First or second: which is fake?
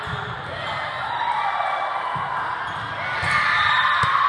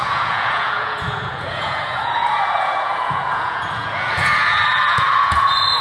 second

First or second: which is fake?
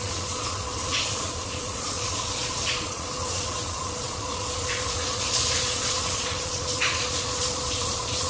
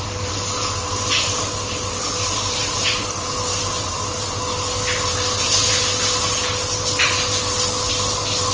first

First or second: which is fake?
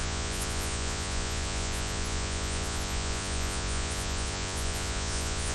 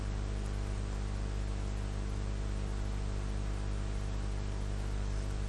first